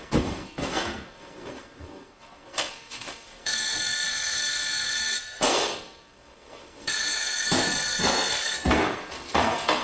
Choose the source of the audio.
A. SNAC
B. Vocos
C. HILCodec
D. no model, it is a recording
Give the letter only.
A